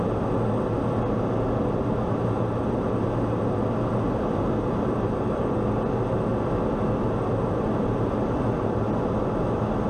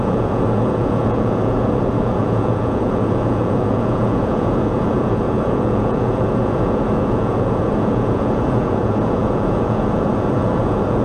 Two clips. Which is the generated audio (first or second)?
second